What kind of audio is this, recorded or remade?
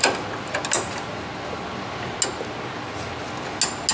recorded